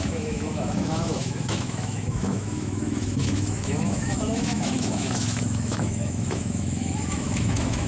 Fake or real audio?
fake